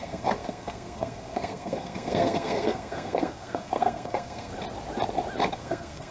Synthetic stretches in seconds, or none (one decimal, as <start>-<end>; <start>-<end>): 0.0-4.5; 5.5-6.1